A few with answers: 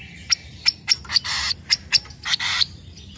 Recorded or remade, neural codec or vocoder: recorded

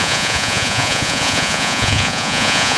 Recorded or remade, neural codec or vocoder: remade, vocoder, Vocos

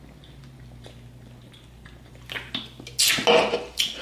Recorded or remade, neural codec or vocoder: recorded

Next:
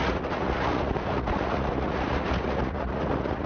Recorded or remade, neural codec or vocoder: remade, vocoder, Vocos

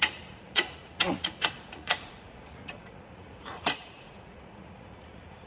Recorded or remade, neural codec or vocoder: remade, vocoder, Vocos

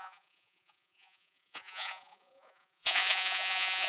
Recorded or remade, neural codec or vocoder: remade, vocoder, Vocos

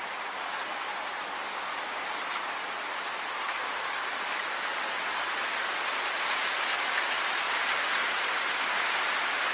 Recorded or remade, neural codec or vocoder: recorded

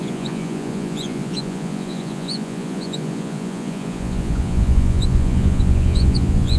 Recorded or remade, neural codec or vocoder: remade, vocoder, Vocos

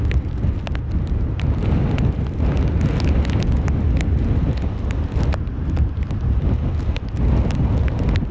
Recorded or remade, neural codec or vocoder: recorded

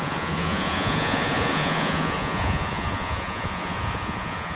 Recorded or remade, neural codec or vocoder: remade, vocoder, Vocos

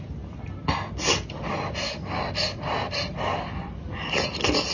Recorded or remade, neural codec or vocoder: recorded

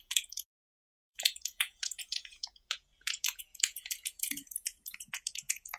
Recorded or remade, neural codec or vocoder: remade, vocoder, Vocos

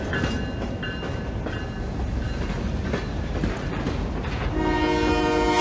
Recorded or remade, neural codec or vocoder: recorded